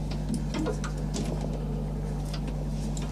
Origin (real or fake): real